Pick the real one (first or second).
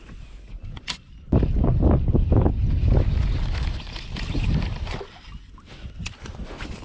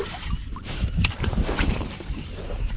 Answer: first